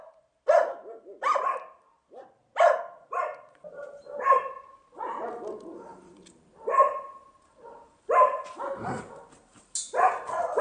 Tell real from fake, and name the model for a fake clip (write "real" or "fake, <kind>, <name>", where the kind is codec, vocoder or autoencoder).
real